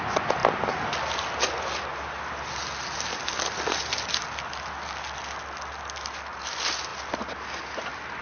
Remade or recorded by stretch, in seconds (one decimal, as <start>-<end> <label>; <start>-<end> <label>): 0.0-8.2 recorded